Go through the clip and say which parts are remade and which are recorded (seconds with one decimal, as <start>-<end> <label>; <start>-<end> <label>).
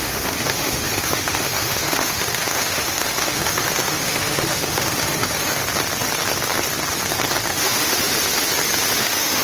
0.0-5.6 remade; 5.6-7.5 recorded; 7.5-8.1 remade; 8.1-9.0 recorded; 9.0-9.4 remade